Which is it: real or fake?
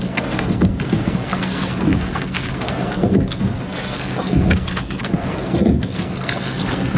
fake